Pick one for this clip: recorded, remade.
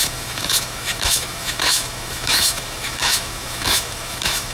remade